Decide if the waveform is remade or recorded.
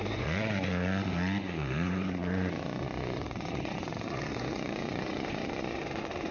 remade